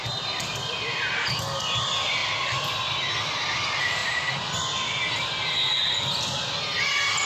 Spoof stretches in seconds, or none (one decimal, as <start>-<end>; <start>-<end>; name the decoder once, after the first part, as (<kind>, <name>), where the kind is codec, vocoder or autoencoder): none